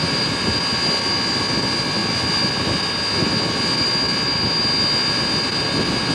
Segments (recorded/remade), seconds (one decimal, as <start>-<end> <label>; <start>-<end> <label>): 0.0-6.1 recorded

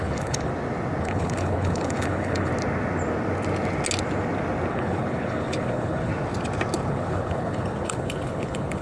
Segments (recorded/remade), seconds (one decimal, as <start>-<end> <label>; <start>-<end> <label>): 0.0-0.5 remade; 0.5-1.0 recorded; 1.0-2.5 remade; 2.5-4.7 recorded; 4.7-6.1 remade; 6.1-6.9 recorded; 6.9-8.8 remade

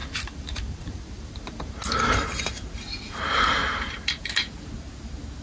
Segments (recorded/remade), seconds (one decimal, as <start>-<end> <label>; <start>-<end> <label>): 0.0-2.4 remade; 2.4-3.6 recorded; 3.6-4.3 remade; 4.3-5.4 recorded

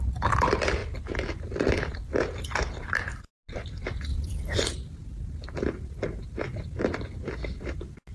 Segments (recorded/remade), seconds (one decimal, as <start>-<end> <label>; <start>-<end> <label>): 0.0-8.1 recorded

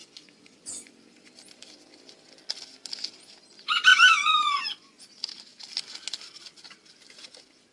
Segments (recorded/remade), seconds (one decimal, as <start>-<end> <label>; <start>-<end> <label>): 0.0-0.9 remade; 0.9-3.9 recorded; 3.9-5.0 remade; 5.0-7.7 recorded

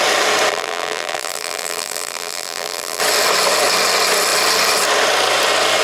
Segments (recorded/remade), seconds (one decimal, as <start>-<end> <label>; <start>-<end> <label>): 0.0-0.5 recorded; 0.5-3.0 remade; 3.0-5.8 recorded

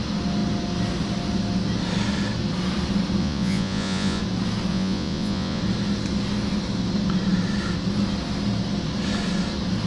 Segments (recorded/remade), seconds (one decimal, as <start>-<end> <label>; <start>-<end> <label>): 0.0-3.2 recorded; 3.2-4.2 remade; 4.2-4.7 recorded; 4.7-5.6 remade; 5.6-9.9 recorded